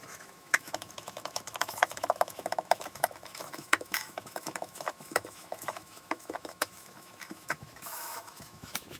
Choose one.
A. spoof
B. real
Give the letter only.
A